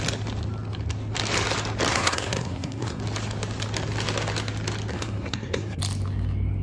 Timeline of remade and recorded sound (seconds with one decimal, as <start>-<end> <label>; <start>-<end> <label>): 0.0-1.9 recorded; 1.9-3.0 remade; 3.0-4.9 recorded; 4.9-5.8 remade; 5.8-6.6 recorded